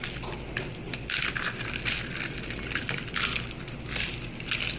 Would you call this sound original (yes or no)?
yes